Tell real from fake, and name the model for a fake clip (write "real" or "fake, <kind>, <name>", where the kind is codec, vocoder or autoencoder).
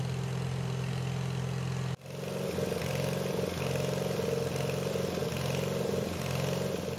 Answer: real